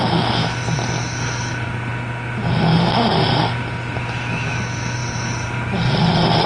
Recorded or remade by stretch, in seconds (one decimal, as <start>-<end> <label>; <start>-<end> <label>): 0.0-5.0 remade; 5.0-6.5 recorded